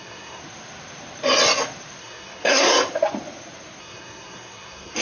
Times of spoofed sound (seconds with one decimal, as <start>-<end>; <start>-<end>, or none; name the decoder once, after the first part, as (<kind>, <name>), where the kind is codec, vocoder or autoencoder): 0.0-0.4 (codec, SNAC); 2.0-2.7; 3.8-5.0